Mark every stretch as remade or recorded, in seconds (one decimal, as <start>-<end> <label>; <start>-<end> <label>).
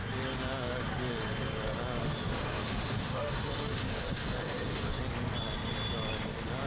0.0-2.0 recorded; 2.0-5.0 remade; 5.0-6.7 recorded